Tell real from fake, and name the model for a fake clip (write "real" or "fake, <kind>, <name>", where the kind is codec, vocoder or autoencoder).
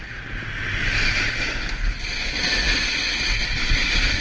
real